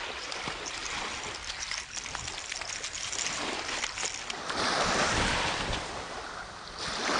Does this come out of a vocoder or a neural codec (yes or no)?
no